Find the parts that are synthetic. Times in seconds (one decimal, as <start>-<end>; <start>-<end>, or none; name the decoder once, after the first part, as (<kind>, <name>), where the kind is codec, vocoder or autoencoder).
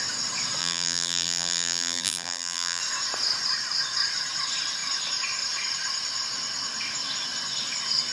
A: 0.6-2.8 (vocoder, BigVGAN v2)